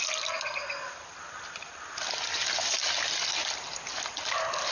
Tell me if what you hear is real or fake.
real